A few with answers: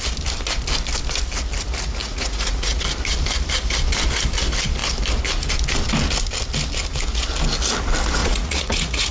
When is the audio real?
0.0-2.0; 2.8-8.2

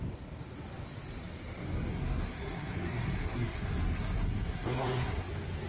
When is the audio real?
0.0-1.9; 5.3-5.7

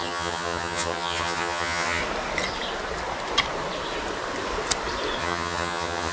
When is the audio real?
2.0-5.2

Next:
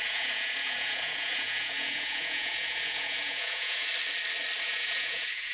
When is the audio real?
3.9-4.6

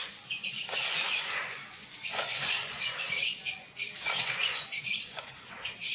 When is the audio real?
none

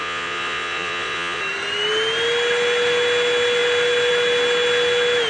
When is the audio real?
1.4-5.3